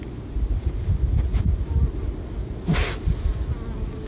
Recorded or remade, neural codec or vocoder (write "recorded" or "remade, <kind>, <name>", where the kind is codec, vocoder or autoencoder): recorded